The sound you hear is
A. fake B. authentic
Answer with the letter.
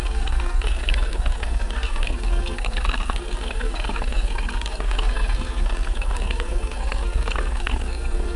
A